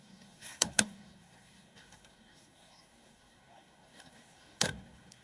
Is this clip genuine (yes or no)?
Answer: no